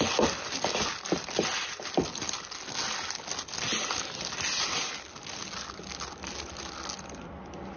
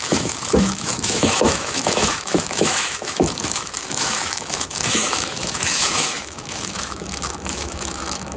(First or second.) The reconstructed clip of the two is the second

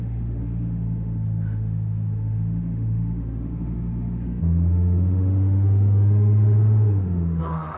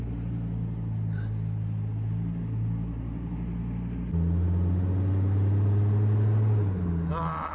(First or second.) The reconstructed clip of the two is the first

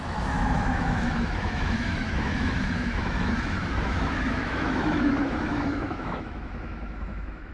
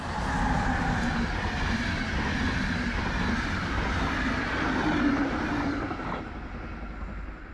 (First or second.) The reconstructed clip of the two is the first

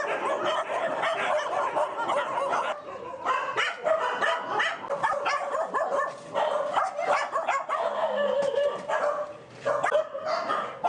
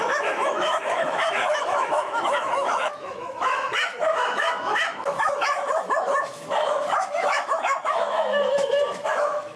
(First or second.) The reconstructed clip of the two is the second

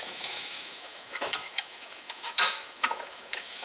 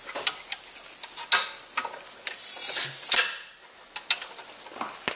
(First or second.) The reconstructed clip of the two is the first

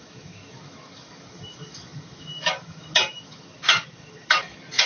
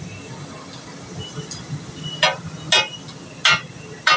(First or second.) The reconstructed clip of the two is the first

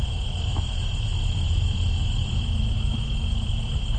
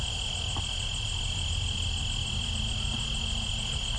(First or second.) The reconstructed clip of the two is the first